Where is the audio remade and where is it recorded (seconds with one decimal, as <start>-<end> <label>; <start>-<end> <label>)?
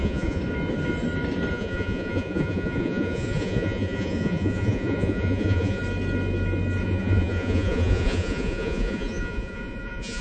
0.0-0.4 remade; 0.4-1.5 recorded; 1.5-5.8 remade; 5.8-6.8 recorded; 6.8-10.2 remade